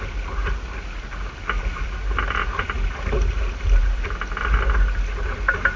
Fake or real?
real